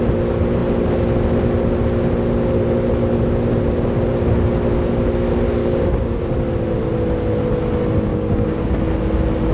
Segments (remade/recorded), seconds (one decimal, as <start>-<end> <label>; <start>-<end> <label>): 0.0-5.6 recorded; 5.6-6.2 remade; 6.2-8.1 recorded; 8.1-8.7 remade; 8.7-9.5 recorded